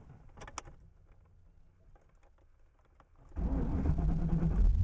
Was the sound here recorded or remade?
recorded